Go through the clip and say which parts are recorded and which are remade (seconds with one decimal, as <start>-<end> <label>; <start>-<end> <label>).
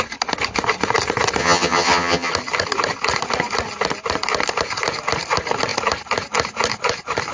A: 0.0-1.4 recorded; 1.4-2.3 remade; 2.3-7.3 recorded